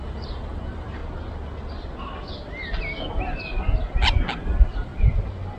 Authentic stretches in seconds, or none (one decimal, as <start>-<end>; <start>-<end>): 1.0-4.4; 4.9-5.6